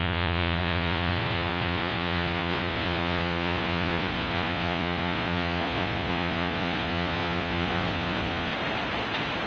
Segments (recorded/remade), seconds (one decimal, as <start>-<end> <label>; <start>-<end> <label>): 0.0-8.5 remade; 8.5-9.5 recorded